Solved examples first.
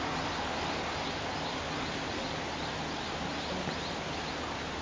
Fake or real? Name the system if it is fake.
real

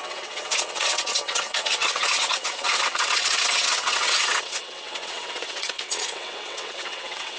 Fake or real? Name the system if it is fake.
fake, vocoder, WaveNeXt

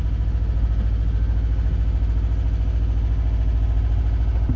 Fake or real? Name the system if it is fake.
real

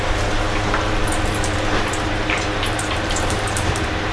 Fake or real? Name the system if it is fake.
fake, vocoder, BigVGAN v2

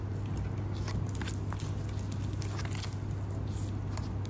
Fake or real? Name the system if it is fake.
real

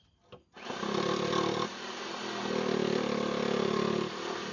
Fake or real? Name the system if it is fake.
real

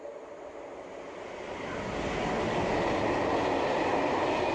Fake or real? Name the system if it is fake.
real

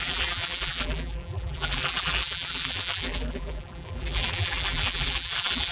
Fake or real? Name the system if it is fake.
fake, vocoder, BigVGAN v2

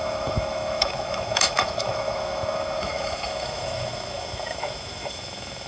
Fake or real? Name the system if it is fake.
fake, autoencoder, DAC-VAE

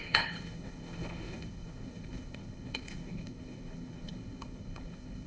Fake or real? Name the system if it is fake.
fake, codec, HILCodec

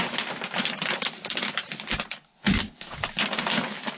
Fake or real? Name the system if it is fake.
real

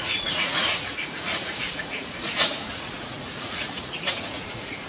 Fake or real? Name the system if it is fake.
fake, vocoder, Vocos